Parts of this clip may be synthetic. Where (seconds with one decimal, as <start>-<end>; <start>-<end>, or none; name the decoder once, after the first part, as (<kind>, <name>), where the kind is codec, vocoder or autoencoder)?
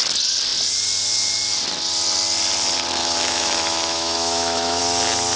3.0-4.8 (autoencoder, DAC-VAE)